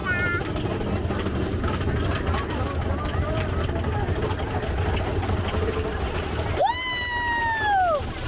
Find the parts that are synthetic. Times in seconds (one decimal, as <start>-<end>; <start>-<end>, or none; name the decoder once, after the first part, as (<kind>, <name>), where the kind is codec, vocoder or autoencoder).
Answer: none